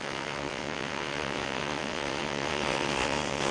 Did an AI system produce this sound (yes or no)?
yes